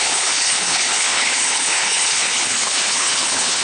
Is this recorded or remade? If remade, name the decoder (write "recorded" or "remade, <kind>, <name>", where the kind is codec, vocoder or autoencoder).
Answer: remade, codec, HILCodec